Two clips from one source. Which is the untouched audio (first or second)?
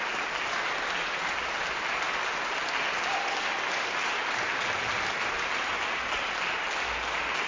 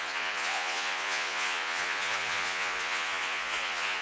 first